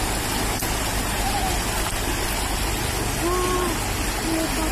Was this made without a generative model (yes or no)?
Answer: yes